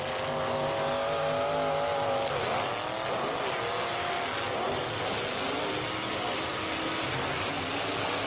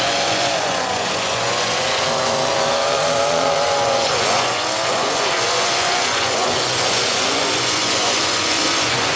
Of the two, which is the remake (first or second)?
second